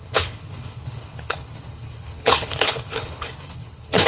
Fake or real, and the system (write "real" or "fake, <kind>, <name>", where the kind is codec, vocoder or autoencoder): fake, codec, HILCodec